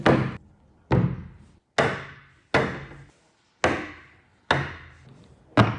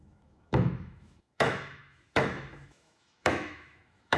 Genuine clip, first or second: first